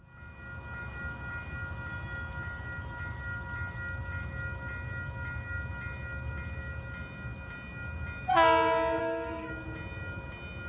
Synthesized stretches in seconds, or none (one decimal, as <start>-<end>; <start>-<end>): 9.0-9.5